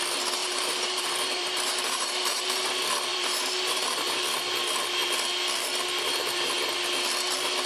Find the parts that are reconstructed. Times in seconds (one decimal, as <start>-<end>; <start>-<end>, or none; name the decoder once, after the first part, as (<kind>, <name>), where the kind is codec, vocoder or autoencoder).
0.4-2.6 (vocoder, BigVGAN v2); 3.1-4.2